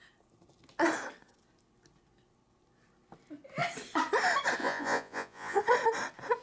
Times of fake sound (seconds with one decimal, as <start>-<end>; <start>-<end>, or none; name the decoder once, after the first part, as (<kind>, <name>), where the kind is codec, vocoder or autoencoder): 4.6-5.6 (vocoder, Vocos)